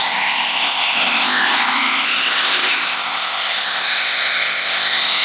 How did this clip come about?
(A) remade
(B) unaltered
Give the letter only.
A